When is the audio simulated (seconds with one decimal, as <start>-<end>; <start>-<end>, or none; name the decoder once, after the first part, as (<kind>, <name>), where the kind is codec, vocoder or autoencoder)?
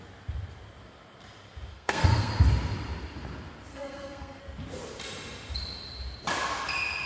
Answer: 1.7-2.3 (codec, SNAC); 3.7-4.4